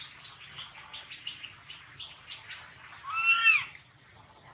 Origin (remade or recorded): recorded